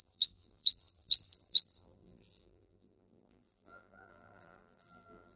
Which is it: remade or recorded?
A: remade